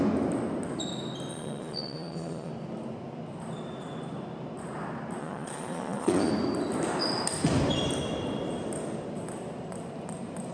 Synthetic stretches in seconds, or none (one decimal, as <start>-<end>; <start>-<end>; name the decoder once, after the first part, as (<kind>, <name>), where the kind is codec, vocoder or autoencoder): 1.3-2.5 (vocoder, Vocos); 5.2-6.3